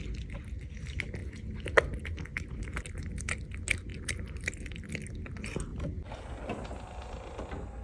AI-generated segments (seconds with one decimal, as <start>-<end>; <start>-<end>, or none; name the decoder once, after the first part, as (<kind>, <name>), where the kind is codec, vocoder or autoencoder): 3.9-4.5 (vocoder, BigVGAN v2)